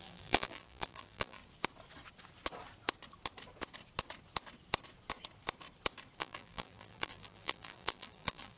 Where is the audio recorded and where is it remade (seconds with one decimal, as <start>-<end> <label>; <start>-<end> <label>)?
0.0-1.4 remade; 1.4-6.2 recorded; 6.2-8.6 remade